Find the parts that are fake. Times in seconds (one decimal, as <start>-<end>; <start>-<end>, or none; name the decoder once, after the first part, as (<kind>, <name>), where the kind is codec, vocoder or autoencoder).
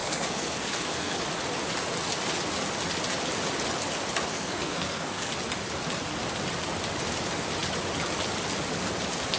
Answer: 0.0-1.2 (codec, SNAC); 4.3-5.3